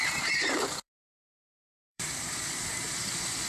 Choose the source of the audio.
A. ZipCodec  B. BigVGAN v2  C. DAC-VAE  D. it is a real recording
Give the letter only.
B